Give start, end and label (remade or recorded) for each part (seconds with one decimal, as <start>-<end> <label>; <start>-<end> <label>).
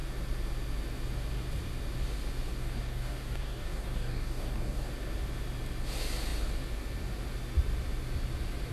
0.0-2.6 recorded; 2.6-4.9 remade; 4.9-8.7 recorded